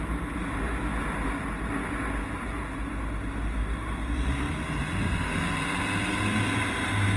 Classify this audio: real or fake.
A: real